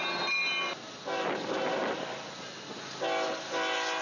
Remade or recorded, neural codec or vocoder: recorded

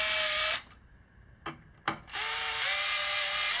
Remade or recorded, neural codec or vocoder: recorded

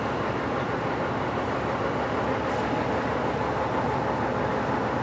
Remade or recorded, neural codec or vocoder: recorded